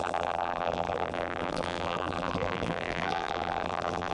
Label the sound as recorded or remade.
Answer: remade